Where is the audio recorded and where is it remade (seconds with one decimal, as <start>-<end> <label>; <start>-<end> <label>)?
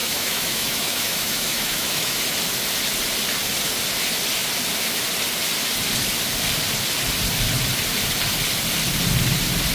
0.0-2.2 remade; 2.2-9.7 recorded